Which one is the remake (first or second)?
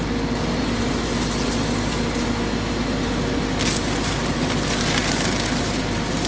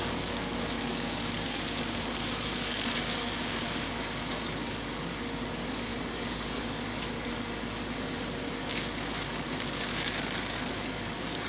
second